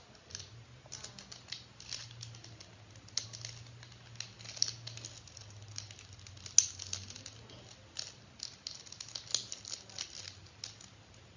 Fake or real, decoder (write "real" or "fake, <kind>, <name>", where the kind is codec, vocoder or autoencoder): real